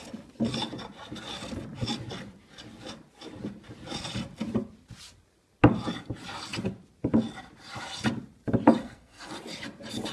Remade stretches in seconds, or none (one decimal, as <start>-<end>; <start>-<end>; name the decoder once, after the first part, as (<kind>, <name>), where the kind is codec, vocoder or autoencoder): 8.8-9.3 (codec, SNAC)